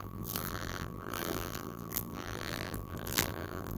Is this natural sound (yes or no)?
no